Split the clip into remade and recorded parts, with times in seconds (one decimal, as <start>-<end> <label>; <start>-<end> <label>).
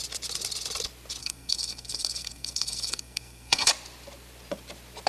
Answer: 0.0-1.2 recorded; 1.2-3.7 remade; 3.7-5.1 recorded